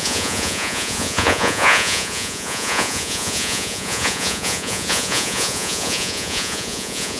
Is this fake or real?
fake